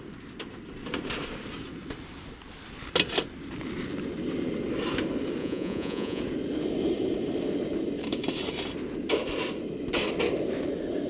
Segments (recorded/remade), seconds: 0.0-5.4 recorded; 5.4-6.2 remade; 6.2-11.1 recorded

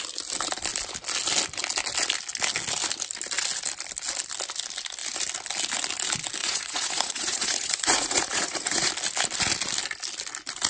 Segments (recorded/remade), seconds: 0.0-6.4 recorded; 6.4-8.9 remade; 8.9-10.7 recorded

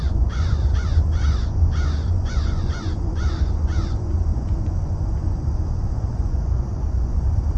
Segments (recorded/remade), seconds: 0.0-7.6 remade

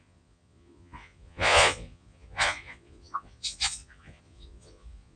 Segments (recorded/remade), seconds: 0.0-5.2 remade

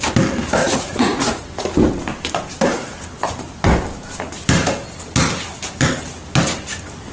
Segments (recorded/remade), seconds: 0.0-0.6 recorded; 0.6-1.5 remade; 1.5-7.1 recorded

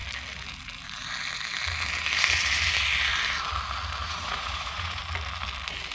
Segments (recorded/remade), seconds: 0.0-4.0 recorded; 4.0-5.0 remade; 5.0-5.9 recorded

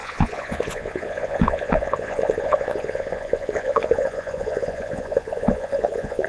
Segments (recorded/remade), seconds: 0.0-6.3 remade

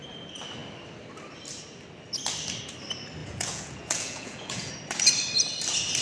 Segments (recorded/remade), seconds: 0.0-3.2 recorded; 3.2-4.7 remade; 4.7-6.0 recorded